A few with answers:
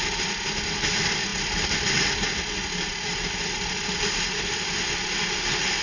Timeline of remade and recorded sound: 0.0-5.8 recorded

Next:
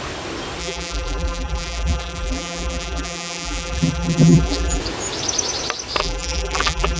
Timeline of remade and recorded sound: 0.0-0.6 recorded; 0.6-4.8 remade; 4.8-6.0 recorded; 6.0-7.0 remade